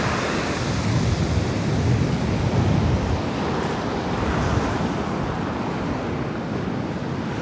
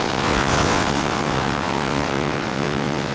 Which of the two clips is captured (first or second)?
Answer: first